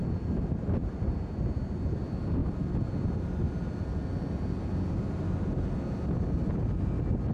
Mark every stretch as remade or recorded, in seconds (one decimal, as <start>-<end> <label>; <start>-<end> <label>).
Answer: 0.0-7.3 recorded